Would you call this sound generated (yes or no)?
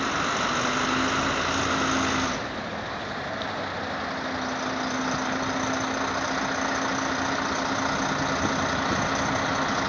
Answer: no